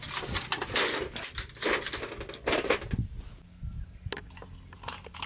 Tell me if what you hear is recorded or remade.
recorded